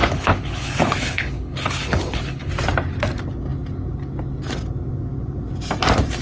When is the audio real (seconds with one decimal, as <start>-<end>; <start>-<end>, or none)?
2.5-6.2